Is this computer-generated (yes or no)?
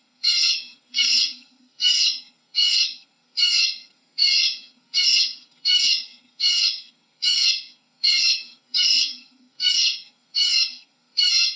yes